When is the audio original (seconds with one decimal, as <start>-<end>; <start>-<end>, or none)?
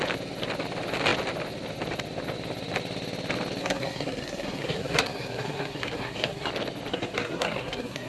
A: 0.0-3.6; 6.5-6.9